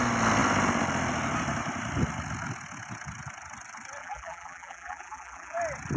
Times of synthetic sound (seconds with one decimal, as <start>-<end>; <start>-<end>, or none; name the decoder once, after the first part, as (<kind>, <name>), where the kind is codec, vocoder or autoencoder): 4.0-5.6 (vocoder, BigVGAN v2)